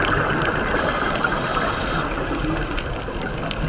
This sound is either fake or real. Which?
real